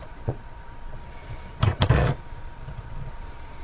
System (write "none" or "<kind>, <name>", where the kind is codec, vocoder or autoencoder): vocoder, Vocos